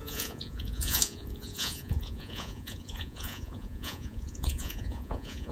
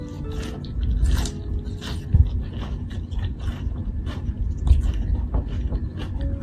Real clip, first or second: second